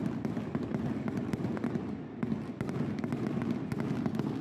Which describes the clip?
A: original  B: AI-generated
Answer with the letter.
A